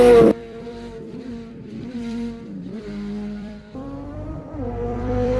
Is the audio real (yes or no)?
no